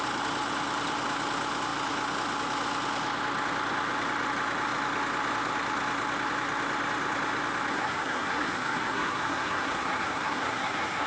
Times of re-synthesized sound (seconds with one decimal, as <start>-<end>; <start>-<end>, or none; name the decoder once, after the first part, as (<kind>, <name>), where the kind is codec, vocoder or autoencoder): 7.7-11.1 (codec, SNAC)